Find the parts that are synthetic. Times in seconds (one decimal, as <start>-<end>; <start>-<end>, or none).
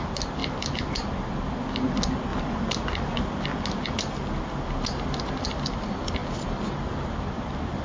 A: none